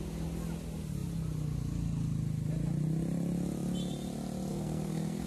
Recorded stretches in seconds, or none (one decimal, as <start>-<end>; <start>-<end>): 0.0-4.5